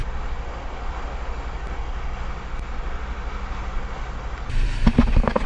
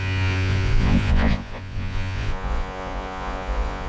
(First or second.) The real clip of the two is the first